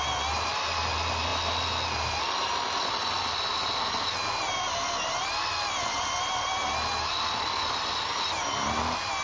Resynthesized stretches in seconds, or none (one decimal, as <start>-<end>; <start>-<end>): none